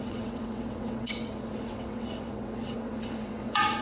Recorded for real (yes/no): no